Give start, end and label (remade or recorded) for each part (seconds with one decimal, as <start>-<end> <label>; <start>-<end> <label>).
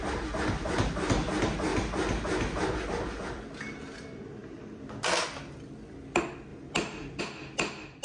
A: 0.0-6.5 recorded; 6.5-7.2 remade; 7.2-8.0 recorded